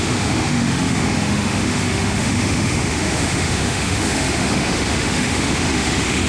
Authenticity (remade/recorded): remade